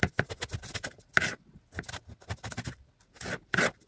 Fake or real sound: real